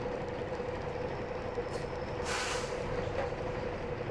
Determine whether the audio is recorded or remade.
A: recorded